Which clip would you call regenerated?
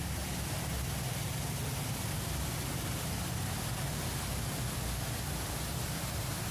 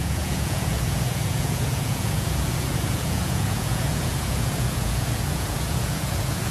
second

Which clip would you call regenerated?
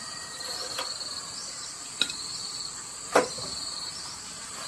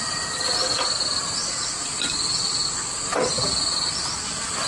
first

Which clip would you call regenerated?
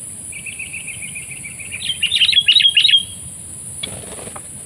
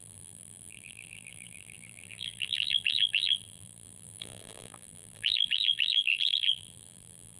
second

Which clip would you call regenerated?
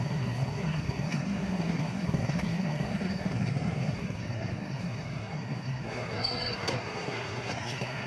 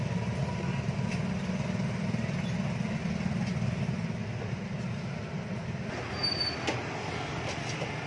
first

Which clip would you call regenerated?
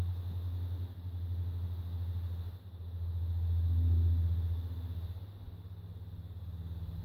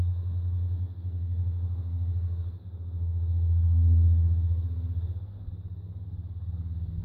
second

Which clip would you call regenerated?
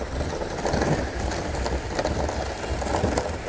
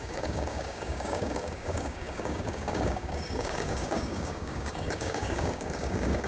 second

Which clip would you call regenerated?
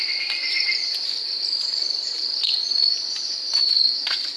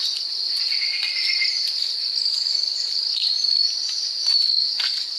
second